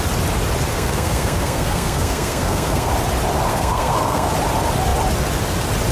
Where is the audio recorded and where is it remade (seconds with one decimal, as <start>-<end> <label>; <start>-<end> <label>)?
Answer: 0.0-0.7 recorded; 0.7-2.9 remade; 2.9-3.5 recorded; 3.5-4.3 remade; 4.3-5.9 recorded